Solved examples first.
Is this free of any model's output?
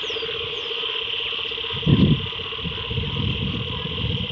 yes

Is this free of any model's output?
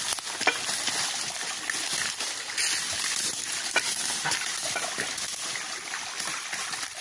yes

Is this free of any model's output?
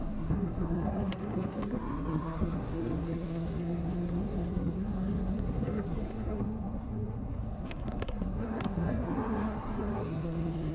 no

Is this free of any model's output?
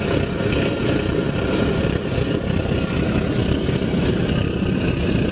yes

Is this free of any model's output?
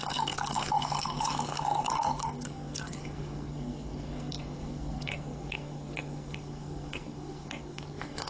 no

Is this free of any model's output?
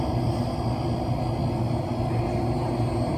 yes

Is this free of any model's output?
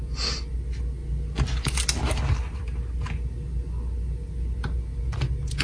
yes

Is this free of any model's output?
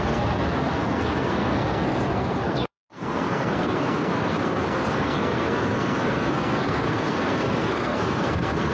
no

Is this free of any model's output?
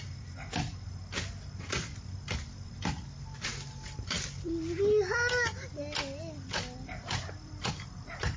yes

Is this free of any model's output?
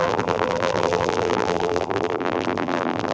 no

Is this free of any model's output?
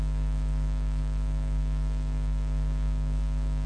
no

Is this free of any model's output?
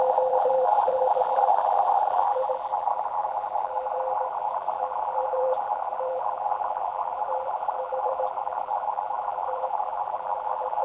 no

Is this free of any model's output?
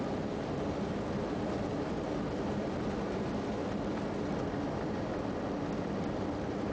yes